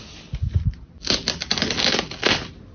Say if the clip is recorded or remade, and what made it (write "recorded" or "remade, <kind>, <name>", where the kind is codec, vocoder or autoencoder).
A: recorded